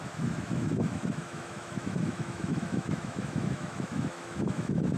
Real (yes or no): no